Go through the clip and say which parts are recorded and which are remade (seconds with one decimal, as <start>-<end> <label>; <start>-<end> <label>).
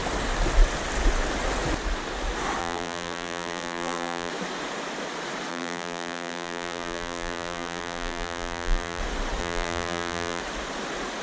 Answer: 0.0-2.6 recorded; 2.6-4.3 remade; 4.3-5.5 recorded; 5.5-9.0 remade; 9.0-9.4 recorded; 9.4-10.4 remade; 10.4-11.2 recorded